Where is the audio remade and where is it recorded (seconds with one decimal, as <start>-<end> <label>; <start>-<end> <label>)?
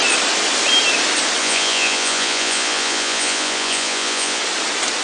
0.0-1.4 recorded; 1.4-4.4 remade; 4.4-5.0 recorded